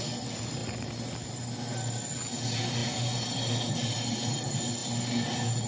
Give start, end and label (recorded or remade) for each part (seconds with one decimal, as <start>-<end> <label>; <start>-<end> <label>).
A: 0.0-5.7 recorded